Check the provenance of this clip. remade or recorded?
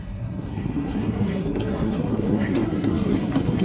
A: remade